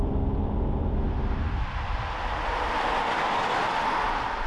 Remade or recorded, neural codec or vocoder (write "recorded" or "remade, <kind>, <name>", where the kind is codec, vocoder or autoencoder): recorded